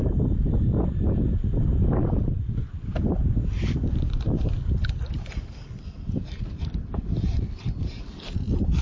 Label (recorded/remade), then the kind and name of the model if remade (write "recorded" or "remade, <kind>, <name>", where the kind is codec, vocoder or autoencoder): recorded